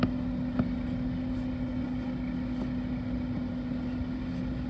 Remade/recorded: recorded